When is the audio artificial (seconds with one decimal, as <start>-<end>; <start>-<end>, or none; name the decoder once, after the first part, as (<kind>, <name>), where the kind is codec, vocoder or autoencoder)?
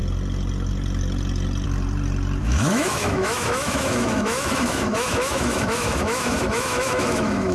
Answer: 2.4-7.5 (autoencoder, DAC-VAE)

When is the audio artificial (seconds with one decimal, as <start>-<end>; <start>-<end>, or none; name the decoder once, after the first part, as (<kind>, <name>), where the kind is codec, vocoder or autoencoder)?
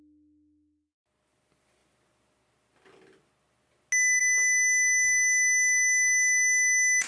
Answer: none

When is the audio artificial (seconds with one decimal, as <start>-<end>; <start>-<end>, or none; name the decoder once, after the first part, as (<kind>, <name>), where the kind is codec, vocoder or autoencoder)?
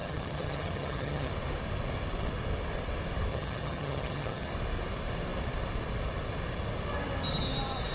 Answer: 0.0-1.3 (vocoder, HiFi-GAN); 3.3-4.5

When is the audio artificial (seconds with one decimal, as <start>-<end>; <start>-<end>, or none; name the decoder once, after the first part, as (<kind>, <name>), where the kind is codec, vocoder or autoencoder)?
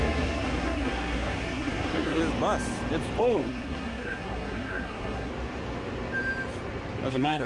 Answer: 0.0-2.2 (codec, SNAC); 3.2-5.3; 7.1-7.5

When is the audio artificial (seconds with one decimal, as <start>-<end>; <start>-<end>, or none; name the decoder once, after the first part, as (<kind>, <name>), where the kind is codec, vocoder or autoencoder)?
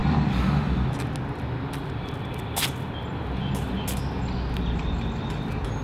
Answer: none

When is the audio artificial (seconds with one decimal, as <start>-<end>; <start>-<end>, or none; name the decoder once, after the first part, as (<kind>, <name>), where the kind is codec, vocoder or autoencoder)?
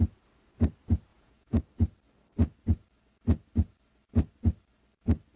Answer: 1.1-1.6 (vocoder, Vocos)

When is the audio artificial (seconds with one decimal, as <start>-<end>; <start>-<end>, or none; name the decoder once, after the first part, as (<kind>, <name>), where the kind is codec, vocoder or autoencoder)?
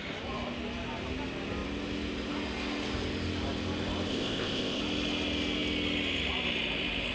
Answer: 4.1-4.8 (codec, ZipCodec)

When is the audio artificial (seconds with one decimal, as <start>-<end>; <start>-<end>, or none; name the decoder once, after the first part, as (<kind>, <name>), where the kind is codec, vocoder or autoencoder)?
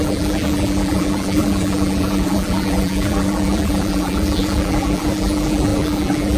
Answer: 0.0-6.4 (vocoder, BigVGAN v2)